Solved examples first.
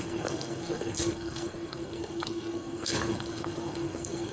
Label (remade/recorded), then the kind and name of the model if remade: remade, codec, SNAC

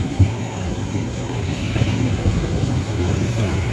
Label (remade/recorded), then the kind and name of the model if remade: remade, codec, SNAC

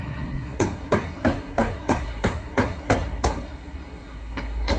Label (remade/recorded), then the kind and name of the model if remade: remade, codec, SNAC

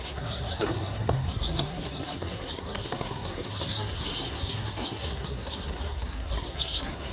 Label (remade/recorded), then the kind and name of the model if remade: remade, codec, SNAC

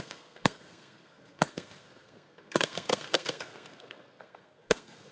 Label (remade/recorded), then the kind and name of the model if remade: remade, codec, SNAC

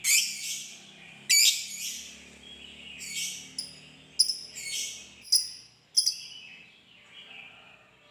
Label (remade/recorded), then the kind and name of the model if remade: recorded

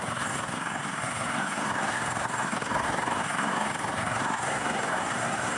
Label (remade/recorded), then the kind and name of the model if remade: remade, codec, SNAC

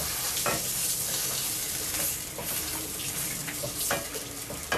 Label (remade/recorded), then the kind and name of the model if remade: recorded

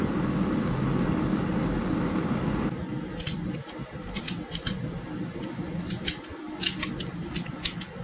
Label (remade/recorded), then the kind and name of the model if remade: recorded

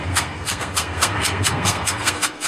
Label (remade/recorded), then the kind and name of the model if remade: remade, codec, SNAC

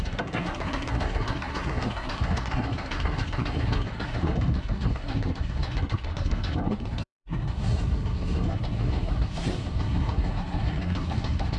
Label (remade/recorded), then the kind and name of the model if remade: remade, codec, SNAC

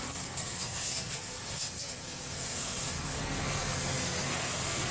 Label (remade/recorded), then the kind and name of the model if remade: remade, codec, SNAC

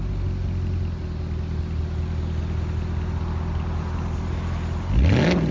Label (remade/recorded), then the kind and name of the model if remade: recorded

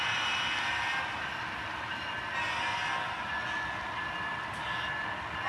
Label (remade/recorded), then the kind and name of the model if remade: recorded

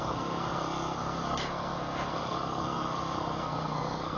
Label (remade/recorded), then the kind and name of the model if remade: remade, codec, SNAC